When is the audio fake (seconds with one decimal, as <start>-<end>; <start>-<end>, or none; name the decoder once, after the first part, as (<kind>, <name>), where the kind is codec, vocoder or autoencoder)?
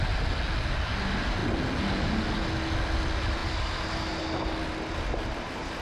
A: none